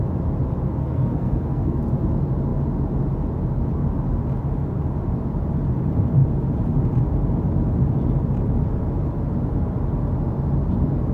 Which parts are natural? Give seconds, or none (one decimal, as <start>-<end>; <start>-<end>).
0.0-0.8; 1.8-11.1